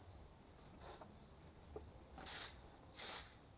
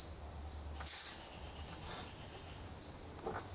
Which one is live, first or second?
second